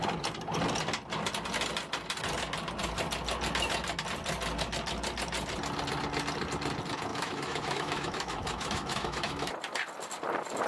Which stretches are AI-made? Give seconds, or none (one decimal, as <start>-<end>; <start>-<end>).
7.1-9.5

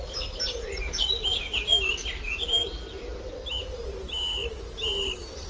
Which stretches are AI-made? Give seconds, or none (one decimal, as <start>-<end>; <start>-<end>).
none

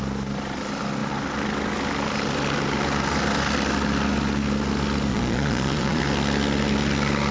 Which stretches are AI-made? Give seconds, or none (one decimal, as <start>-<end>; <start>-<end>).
5.1-6.0